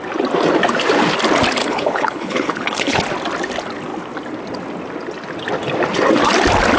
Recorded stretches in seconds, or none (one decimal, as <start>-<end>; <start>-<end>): 0.0-1.6; 3.0-6.8